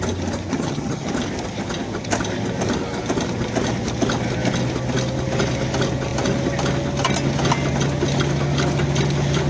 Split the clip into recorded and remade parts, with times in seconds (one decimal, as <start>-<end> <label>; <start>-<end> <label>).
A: 0.0-0.5 recorded; 0.5-1.1 remade; 1.1-9.5 recorded